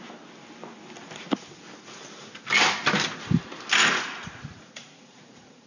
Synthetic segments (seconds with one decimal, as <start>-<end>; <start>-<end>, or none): 3.8-5.7